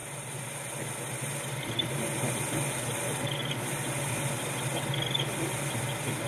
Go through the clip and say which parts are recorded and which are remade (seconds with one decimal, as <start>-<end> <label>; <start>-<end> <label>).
0.0-6.3 recorded